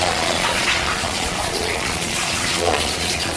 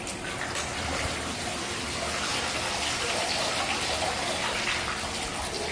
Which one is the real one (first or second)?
second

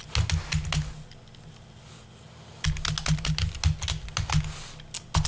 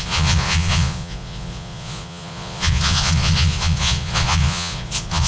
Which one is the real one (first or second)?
first